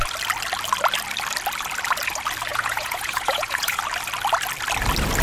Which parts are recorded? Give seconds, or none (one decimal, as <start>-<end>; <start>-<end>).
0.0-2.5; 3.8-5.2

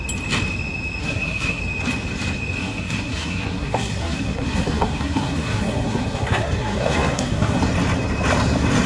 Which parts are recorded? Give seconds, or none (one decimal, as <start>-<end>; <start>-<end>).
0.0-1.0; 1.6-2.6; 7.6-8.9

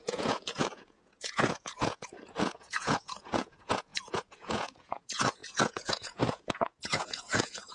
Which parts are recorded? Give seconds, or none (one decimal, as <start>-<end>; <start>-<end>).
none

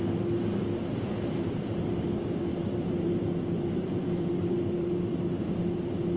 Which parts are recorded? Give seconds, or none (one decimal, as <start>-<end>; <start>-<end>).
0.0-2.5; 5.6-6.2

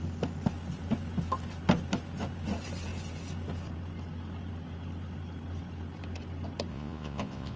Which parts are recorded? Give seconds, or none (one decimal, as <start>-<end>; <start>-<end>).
0.0-6.7

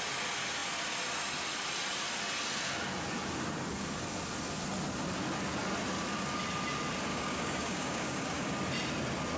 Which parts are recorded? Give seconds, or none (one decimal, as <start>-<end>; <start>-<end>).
0.0-7.1; 8.5-9.4